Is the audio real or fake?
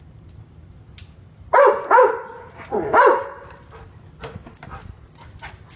real